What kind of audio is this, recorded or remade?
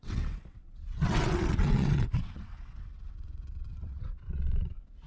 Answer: remade